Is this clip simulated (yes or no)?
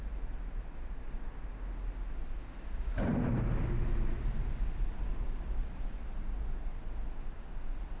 no